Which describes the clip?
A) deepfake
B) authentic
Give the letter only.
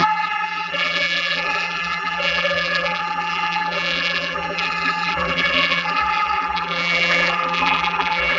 A